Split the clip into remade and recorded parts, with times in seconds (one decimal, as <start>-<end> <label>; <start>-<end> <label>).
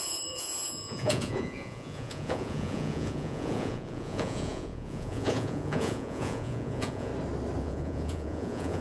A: 0.0-7.1 remade; 7.1-7.6 recorded; 7.6-8.8 remade